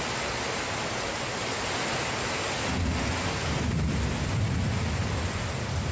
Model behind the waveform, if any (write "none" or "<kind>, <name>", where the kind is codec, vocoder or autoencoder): none